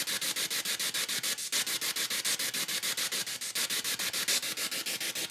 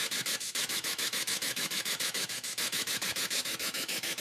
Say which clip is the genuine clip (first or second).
first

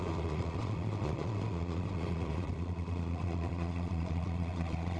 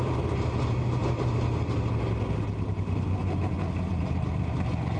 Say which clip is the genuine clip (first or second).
second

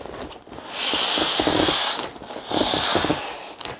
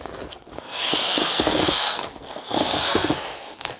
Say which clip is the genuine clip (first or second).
first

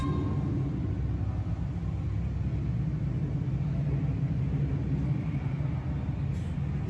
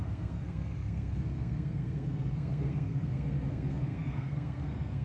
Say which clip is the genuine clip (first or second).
first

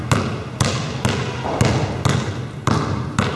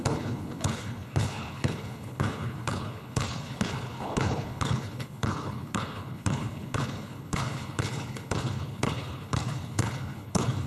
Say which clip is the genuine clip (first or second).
first